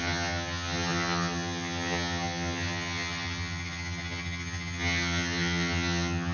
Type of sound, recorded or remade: remade